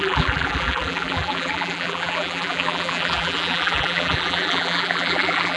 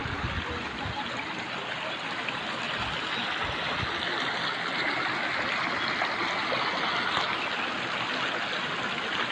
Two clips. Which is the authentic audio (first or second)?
second